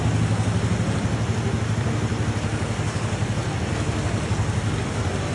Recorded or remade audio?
recorded